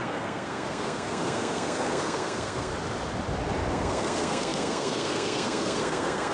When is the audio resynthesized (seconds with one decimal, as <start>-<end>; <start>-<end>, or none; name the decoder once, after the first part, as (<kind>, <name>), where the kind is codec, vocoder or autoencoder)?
0.0-2.7 (codec, SNAC); 3.7-6.3